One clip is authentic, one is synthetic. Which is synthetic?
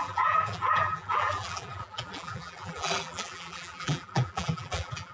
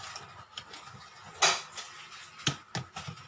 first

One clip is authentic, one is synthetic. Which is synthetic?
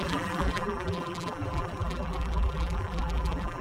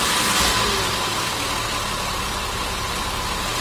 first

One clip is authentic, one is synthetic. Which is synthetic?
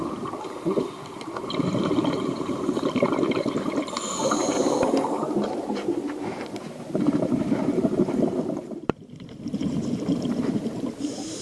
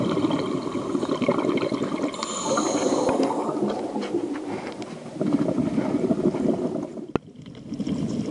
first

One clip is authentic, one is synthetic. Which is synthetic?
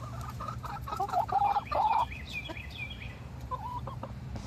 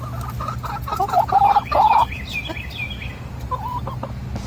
first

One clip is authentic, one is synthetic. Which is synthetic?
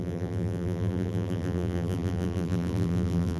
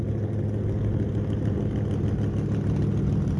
first